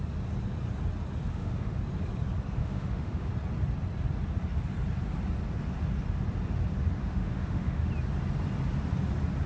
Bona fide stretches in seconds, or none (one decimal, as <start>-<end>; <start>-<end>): 0.0-1.3; 1.8-2.6; 3.3-7.0; 7.9-9.5